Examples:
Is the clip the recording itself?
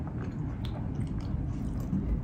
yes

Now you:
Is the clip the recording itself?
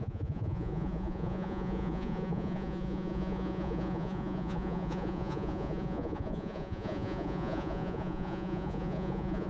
no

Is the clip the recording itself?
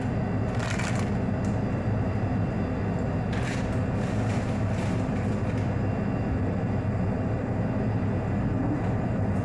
yes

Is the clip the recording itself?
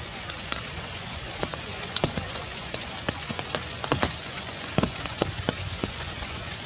no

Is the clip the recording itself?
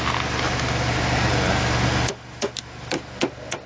yes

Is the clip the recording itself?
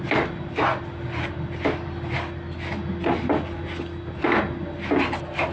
yes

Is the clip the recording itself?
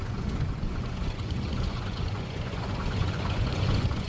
no